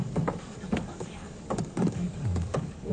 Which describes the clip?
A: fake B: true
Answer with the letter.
A